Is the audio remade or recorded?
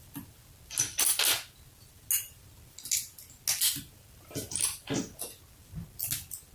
recorded